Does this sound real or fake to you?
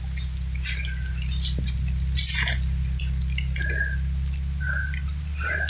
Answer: real